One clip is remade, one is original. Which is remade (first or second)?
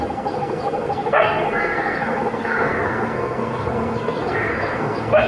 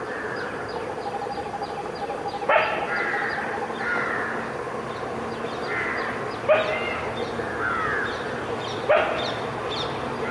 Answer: first